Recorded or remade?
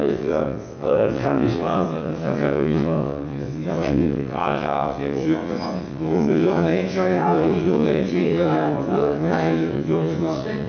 remade